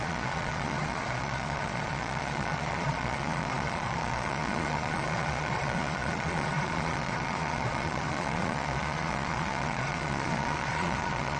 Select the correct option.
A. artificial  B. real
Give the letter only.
A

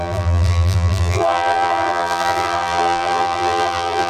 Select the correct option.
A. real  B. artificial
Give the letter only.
B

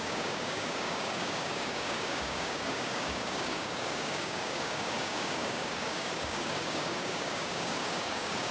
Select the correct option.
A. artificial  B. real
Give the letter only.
A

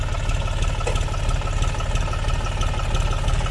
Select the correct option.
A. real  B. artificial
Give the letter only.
A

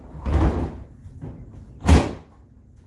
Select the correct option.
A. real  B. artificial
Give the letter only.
A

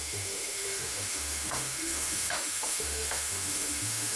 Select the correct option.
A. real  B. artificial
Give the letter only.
B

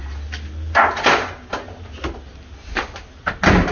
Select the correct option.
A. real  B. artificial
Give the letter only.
A